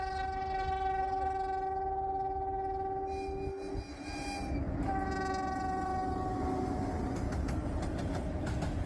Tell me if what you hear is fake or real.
real